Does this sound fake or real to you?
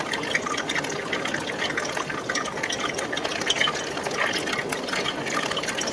real